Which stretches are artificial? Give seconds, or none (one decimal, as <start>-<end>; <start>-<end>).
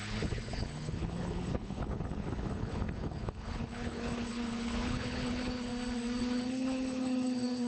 0.0-5.7; 6.2-7.7